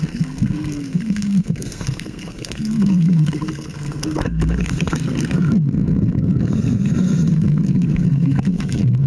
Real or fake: fake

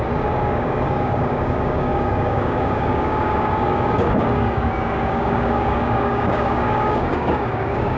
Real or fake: fake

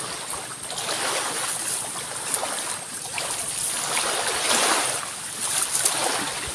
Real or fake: real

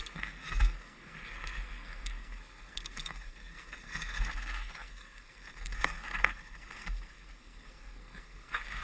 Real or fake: fake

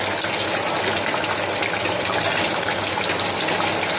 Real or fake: real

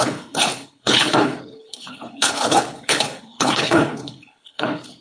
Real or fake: fake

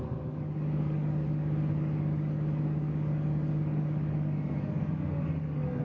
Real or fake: fake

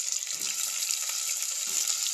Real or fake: fake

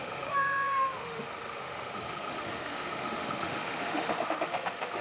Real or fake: fake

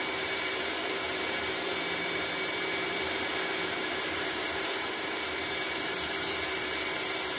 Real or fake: fake